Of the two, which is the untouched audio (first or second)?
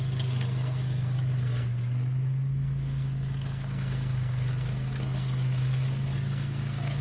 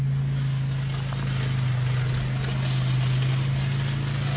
second